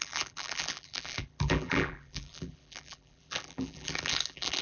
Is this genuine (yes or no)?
no